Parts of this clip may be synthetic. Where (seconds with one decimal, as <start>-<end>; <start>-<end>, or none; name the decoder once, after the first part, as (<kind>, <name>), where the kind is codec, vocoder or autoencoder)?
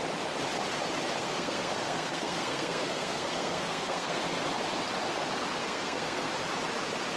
1.2-4.2 (codec, SNAC); 5.6-6.3